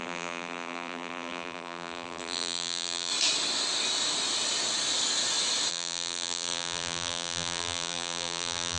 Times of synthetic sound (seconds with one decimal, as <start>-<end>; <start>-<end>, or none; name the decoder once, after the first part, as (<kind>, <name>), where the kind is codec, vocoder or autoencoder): 0.0-3.1 (vocoder, BigVGAN v2); 5.7-8.8